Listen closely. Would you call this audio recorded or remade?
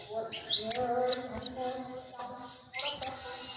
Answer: recorded